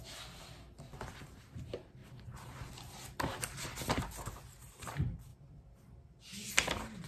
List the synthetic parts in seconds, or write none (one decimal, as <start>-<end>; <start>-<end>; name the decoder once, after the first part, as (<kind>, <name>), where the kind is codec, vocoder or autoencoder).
none